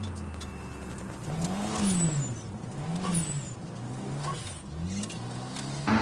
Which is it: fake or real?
real